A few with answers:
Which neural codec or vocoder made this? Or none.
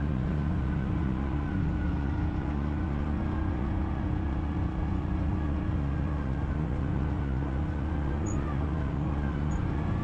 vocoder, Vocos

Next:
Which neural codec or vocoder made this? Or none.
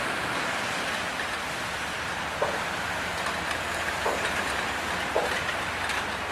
none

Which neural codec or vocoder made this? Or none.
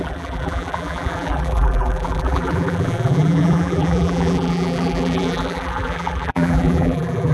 vocoder, BigVGAN v2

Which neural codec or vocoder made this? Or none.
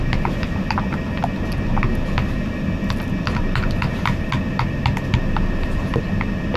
none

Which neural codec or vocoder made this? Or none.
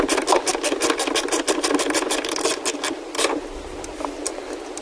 none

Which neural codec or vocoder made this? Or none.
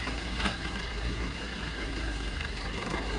codec, SNAC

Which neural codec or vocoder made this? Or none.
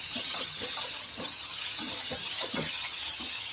vocoder, HiFi-GAN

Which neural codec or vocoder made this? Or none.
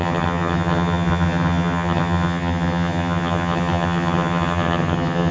vocoder, HiFi-GAN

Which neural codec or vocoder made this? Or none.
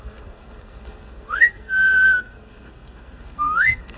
codec, SNAC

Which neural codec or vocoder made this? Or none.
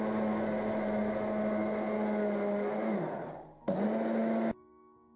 none